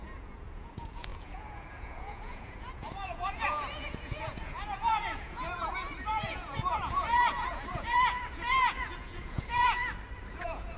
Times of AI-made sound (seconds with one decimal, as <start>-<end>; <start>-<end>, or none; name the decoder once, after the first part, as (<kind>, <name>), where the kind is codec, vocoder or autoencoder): 0.0-9.8 (vocoder, Vocos); 10.3-10.8